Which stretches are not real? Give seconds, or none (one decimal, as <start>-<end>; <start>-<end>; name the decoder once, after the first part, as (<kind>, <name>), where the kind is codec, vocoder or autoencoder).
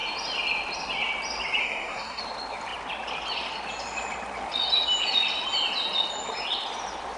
1.6-2.2 (codec, SNAC)